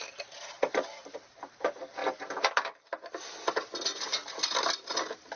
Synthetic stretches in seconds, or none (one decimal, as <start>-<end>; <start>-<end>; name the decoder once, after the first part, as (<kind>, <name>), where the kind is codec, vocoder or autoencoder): none